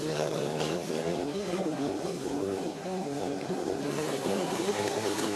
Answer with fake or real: fake